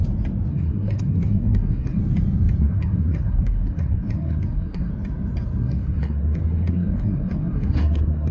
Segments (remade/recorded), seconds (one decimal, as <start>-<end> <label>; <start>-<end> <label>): 0.0-0.5 recorded; 0.5-2.0 remade; 2.0-2.6 recorded; 2.6-4.9 remade; 4.9-5.6 recorded; 5.6-8.3 remade